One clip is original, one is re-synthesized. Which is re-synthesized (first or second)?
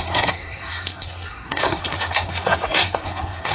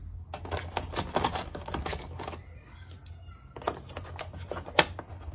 first